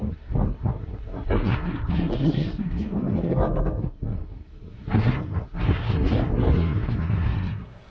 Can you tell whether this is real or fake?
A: fake